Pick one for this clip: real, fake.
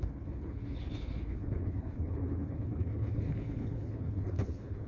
fake